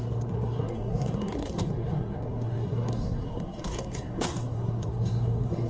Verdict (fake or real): fake